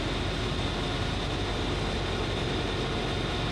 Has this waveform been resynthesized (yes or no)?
no